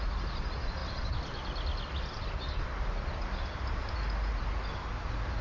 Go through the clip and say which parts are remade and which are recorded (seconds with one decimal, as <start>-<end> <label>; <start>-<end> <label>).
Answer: 0.0-5.4 recorded